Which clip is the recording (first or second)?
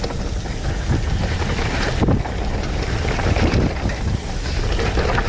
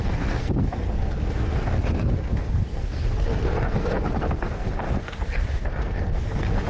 first